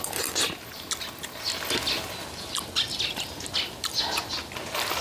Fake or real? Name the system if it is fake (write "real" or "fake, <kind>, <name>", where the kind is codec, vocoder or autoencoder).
real